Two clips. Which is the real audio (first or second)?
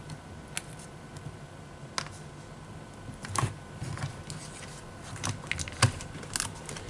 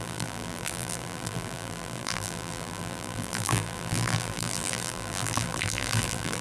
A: first